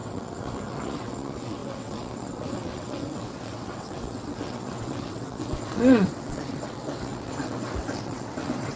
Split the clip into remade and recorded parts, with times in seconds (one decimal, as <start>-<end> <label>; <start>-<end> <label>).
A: 0.0-8.8 remade